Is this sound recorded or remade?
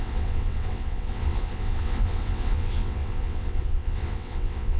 remade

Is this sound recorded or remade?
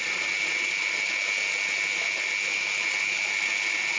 recorded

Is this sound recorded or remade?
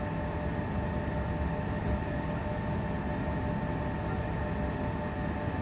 recorded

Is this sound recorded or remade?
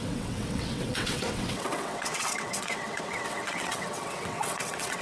remade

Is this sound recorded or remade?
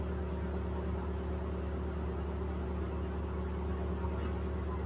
recorded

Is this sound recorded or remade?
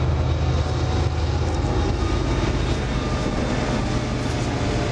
recorded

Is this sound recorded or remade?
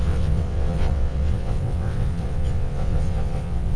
remade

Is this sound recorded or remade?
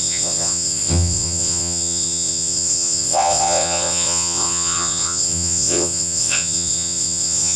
remade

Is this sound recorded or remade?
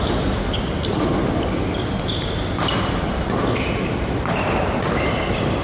recorded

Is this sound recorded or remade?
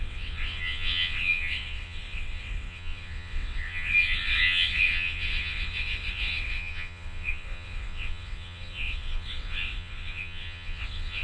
remade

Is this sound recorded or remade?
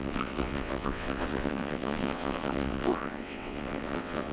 remade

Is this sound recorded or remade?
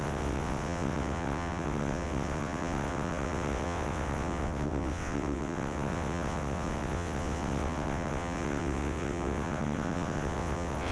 remade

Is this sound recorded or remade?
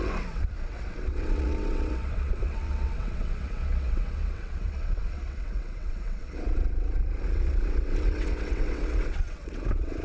remade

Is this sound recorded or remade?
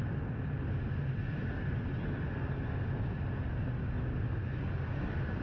recorded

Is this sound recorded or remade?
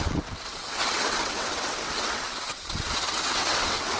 remade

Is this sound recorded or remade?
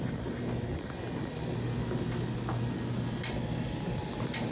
recorded